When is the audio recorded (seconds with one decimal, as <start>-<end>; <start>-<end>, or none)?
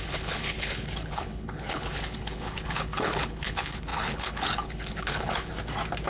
5.5-6.1